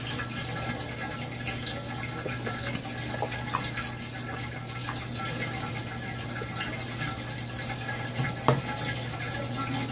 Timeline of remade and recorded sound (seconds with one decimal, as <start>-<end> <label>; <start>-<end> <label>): 0.0-9.9 recorded